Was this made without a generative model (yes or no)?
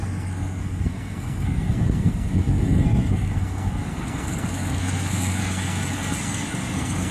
no